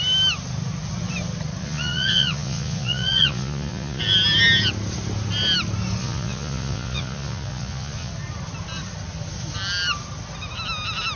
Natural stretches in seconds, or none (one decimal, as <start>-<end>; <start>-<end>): 0.0-1.6; 4.0-6.0; 8.1-11.2